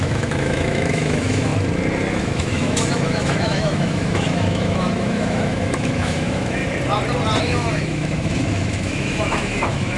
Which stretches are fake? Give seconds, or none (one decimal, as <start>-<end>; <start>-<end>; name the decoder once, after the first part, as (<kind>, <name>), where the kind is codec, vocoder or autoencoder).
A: 0.0-1.5 (autoencoder, DAC-VAE); 2.1-6.6; 7.4-10.0